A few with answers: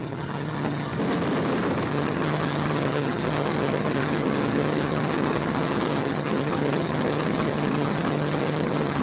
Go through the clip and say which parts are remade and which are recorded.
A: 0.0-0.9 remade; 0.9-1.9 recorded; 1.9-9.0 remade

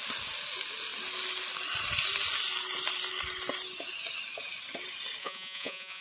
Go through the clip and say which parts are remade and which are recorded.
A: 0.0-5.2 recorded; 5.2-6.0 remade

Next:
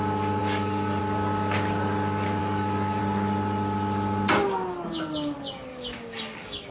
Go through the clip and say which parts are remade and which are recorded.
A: 0.0-0.4 recorded; 0.4-1.0 remade; 1.0-2.4 recorded; 2.4-3.0 remade; 3.0-5.7 recorded; 5.7-6.7 remade

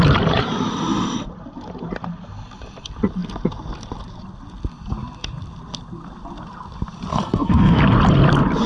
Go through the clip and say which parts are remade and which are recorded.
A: 0.0-7.1 recorded; 7.1-7.8 remade; 7.8-8.7 recorded

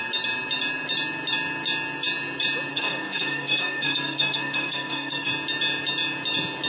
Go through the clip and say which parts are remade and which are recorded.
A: 0.0-2.7 recorded; 2.7-5.3 remade; 5.3-6.7 recorded

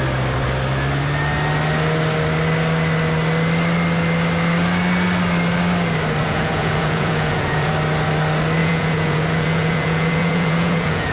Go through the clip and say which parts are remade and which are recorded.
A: 0.0-6.2 recorded; 6.2-7.7 remade; 7.7-8.6 recorded; 8.6-11.1 remade

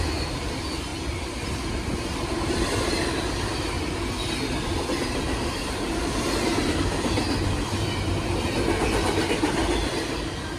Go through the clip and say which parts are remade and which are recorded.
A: 0.0-10.6 recorded